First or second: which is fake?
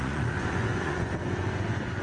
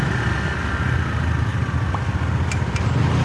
first